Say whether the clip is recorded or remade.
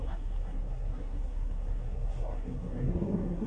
remade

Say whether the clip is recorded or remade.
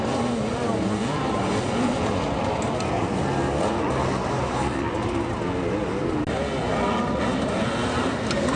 recorded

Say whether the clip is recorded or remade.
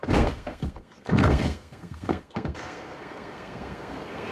remade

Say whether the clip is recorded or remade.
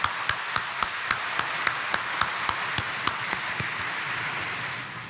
recorded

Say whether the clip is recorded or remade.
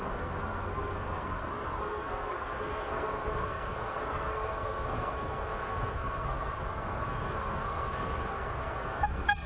remade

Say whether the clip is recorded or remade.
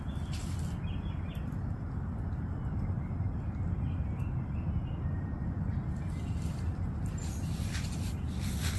recorded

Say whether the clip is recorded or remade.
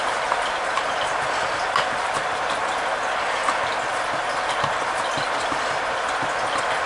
recorded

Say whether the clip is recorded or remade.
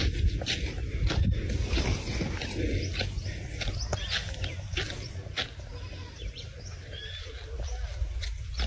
recorded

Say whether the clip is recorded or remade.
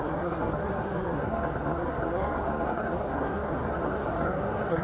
remade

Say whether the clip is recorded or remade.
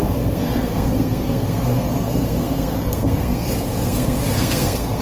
remade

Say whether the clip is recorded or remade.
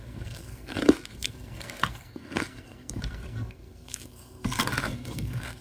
remade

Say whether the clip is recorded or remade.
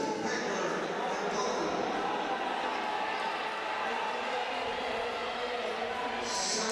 recorded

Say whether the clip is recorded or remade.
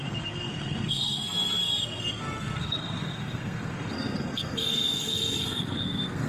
remade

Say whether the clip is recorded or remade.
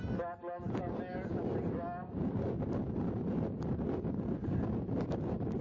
recorded